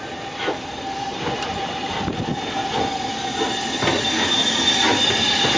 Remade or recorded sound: recorded